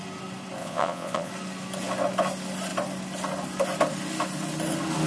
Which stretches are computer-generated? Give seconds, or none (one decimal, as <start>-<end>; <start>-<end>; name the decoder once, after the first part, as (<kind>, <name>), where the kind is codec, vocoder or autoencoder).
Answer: 0.6-1.3 (vocoder, Vocos)